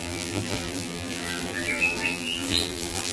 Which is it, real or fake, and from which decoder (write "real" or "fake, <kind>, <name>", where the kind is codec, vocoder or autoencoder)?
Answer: fake, vocoder, BigVGAN v2